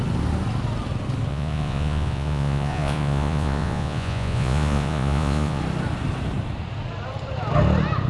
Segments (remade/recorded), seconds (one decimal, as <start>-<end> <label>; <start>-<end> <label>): 0.0-1.3 recorded; 1.3-5.6 remade; 5.6-8.1 recorded